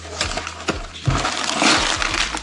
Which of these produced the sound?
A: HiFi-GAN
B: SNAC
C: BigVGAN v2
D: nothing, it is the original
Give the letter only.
D